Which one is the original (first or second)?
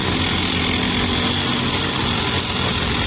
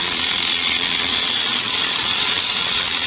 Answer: first